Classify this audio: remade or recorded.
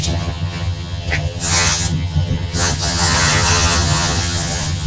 remade